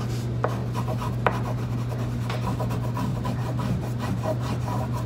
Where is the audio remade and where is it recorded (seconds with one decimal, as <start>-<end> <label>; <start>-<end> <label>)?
0.0-3.1 recorded; 3.1-5.1 remade